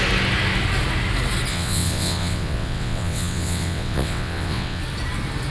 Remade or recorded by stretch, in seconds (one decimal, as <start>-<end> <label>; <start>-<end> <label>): 0.0-1.5 recorded; 1.5-4.8 remade; 4.8-5.5 recorded